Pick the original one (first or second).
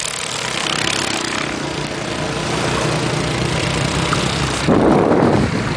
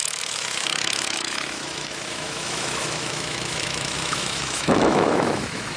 first